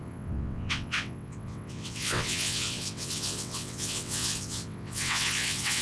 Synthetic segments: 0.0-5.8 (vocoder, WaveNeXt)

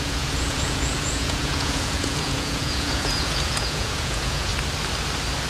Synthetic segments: 0.0-4.5 (vocoder, Vocos)

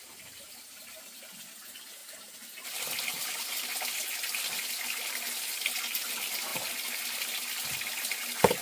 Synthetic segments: none

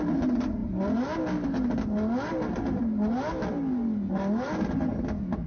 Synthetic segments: none

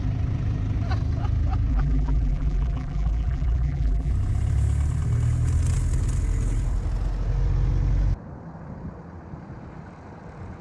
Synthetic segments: 1.7-4.1 (vocoder, BigVGAN v2)

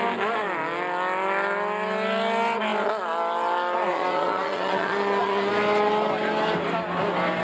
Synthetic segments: 3.9-5.5 (vocoder, Vocos)

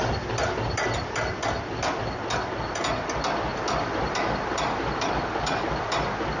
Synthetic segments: none

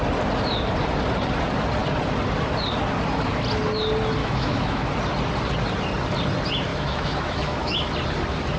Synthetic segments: 4.2-4.9 (autoencoder, DAC-VAE); 6.7-7.9